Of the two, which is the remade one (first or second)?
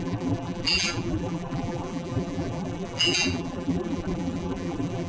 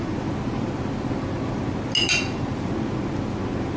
first